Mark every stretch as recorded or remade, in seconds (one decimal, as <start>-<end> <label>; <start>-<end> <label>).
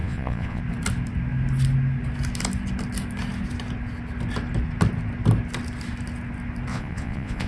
0.0-0.6 remade; 0.6-6.7 recorded; 6.7-7.5 remade